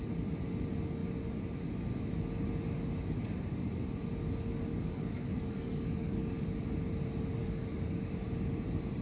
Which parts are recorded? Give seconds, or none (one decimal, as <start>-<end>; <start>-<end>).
0.0-4.7; 6.6-7.4; 8.1-9.0